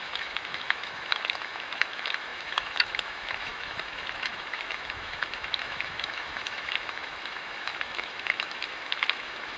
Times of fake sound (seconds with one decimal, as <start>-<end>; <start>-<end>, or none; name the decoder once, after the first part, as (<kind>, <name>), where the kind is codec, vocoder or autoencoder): 0.0-9.6 (autoencoder, DAC-VAE)